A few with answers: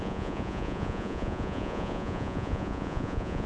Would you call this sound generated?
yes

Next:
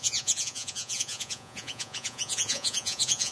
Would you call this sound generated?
yes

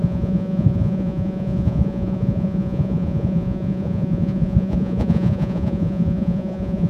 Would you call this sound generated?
yes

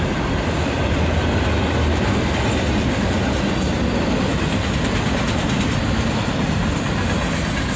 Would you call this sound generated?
no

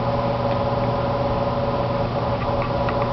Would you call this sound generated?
no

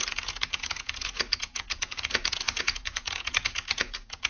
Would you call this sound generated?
yes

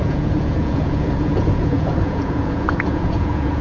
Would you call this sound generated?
yes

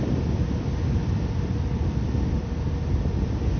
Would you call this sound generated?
no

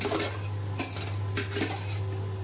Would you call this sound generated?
no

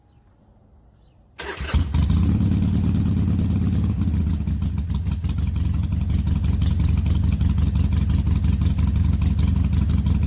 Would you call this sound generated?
no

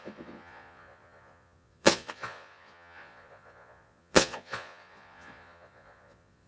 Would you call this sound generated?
yes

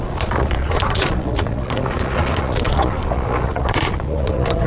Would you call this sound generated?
yes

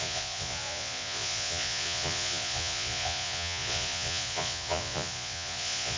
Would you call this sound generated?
yes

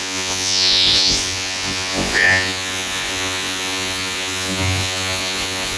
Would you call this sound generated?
yes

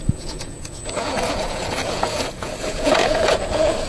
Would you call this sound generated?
yes